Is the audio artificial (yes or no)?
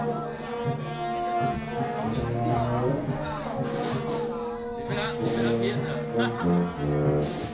no